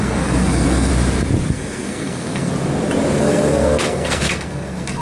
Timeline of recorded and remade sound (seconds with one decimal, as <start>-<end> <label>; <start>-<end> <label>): 0.0-0.9 remade; 0.9-1.5 recorded; 1.5-2.5 remade; 2.5-3.2 recorded; 3.2-5.0 remade